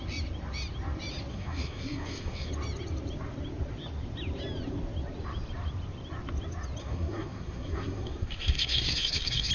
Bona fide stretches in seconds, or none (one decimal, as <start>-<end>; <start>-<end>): 0.0-1.3; 2.5-6.8